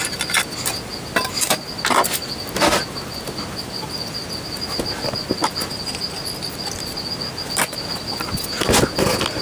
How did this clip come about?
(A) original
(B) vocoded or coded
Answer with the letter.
A